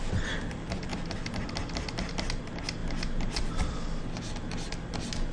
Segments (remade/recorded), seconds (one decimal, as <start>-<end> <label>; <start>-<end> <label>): 0.0-5.3 recorded

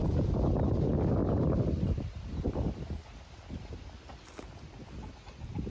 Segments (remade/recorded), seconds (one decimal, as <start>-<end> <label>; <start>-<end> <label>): 0.0-5.7 recorded

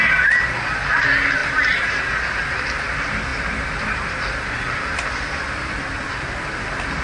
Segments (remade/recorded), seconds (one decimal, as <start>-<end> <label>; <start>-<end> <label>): 0.0-7.0 recorded